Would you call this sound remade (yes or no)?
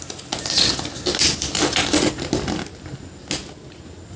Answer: no